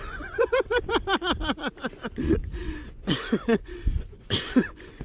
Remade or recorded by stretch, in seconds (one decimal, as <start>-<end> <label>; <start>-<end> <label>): 0.0-0.9 remade; 0.9-1.7 recorded; 1.7-5.0 remade